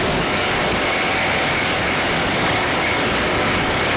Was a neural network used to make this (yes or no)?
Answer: yes